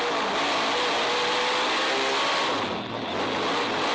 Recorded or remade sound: recorded